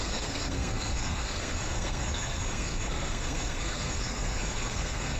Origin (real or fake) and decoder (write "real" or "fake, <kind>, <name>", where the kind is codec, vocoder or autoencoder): fake, codec, SNAC